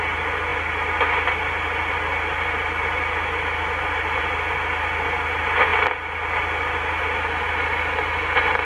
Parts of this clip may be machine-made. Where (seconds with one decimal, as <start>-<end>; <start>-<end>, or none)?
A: none